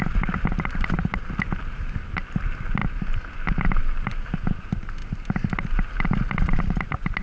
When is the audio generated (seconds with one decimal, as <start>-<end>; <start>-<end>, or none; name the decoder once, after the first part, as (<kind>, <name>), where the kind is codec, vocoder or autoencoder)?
none